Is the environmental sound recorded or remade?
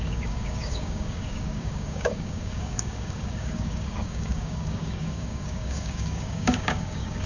remade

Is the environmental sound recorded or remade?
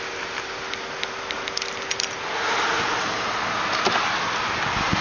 recorded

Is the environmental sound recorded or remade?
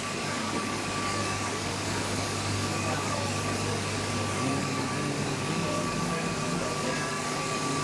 remade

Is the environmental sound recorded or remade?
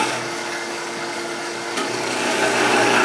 remade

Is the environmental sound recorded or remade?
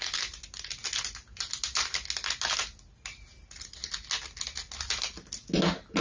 recorded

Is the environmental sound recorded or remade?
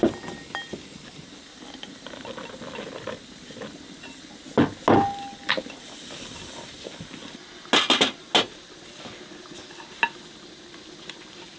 recorded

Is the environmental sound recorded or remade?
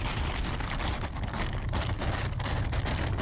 recorded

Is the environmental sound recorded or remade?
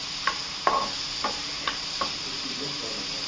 recorded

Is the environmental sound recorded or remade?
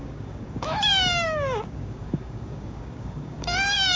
remade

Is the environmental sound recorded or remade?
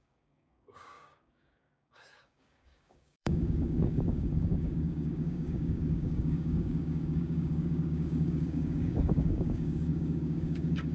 remade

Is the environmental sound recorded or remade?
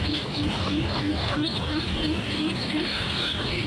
remade